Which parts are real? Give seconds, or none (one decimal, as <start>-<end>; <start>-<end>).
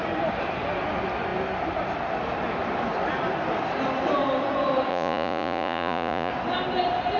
0.0-4.9; 6.3-7.2